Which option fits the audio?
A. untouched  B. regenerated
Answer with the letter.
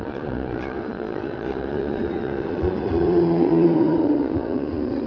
B